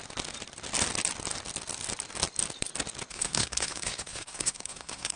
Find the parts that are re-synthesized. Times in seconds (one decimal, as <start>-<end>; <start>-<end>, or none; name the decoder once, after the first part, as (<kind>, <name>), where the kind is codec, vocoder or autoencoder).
3.1-5.2 (codec, SNAC)